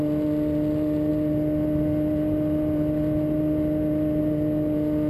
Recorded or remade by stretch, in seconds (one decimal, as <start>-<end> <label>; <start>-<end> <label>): 0.0-5.1 recorded